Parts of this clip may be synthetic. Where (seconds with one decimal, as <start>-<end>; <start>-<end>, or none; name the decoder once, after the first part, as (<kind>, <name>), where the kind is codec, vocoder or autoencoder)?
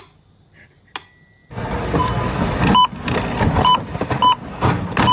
none